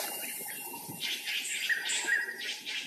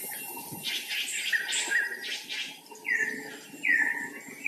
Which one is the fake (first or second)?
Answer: first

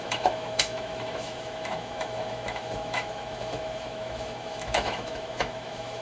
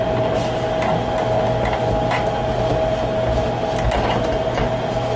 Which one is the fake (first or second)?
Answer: first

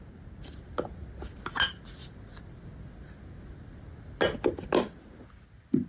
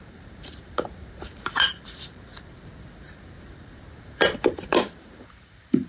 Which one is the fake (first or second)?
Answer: second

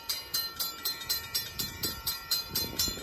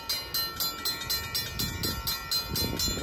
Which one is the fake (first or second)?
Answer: first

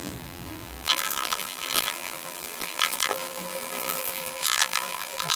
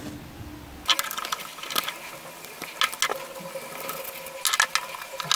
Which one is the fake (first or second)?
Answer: first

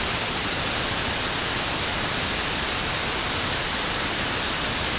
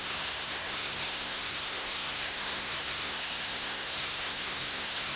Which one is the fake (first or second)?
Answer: second